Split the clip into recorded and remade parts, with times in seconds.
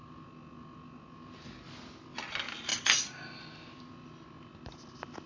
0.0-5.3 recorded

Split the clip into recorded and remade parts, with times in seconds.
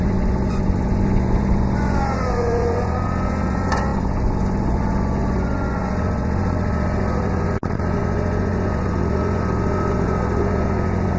0.0-11.2 remade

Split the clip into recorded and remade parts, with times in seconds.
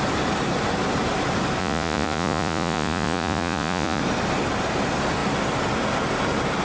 0.0-1.6 recorded; 1.6-4.0 remade; 4.0-6.6 recorded